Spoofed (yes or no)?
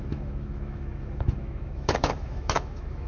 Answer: yes